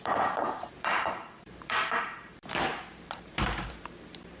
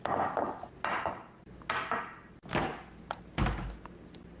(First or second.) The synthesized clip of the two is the first